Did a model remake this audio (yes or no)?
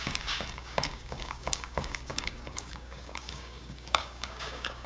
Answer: yes